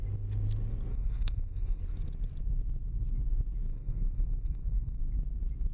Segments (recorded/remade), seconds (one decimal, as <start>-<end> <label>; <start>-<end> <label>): 0.0-0.9 recorded; 0.9-1.8 remade; 1.8-3.7 recorded; 3.7-5.0 remade; 5.0-5.7 recorded